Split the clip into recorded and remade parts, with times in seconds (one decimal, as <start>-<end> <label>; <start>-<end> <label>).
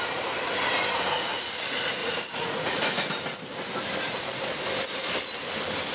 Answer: 0.0-2.0 recorded; 2.0-3.0 remade; 3.0-5.9 recorded